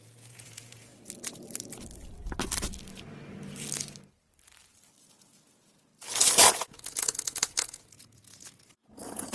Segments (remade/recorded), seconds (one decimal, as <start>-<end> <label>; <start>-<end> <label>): 0.0-0.9 remade; 0.9-5.0 recorded; 5.0-5.9 remade; 5.9-6.5 recorded; 6.5-9.3 remade

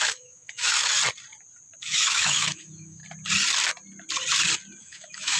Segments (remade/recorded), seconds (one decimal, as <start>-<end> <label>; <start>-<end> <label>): 0.0-0.9 remade; 0.9-1.8 recorded; 1.8-3.0 remade; 3.0-4.8 recorded; 4.8-5.4 remade

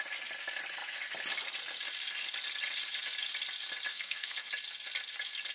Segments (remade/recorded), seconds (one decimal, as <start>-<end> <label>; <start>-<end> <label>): 0.0-3.9 recorded; 3.9-4.5 remade; 4.5-5.5 recorded